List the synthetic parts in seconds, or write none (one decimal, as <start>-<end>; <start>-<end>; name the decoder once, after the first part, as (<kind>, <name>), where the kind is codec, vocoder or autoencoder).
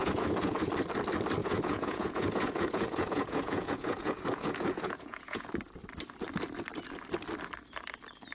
0.0-0.7 (vocoder, Vocos); 1.4-5.5